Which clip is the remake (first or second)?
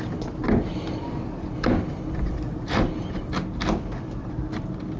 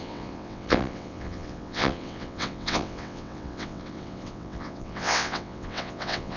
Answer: second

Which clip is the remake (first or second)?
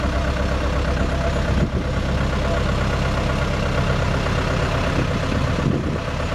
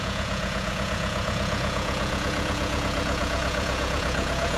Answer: second